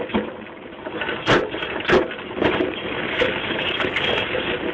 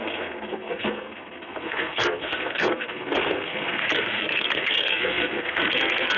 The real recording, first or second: first